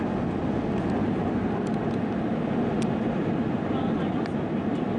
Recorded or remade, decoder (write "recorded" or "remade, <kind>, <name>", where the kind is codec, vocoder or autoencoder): recorded